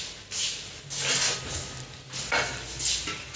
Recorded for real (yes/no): yes